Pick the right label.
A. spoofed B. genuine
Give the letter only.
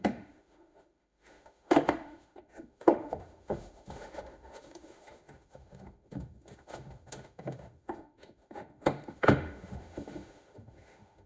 A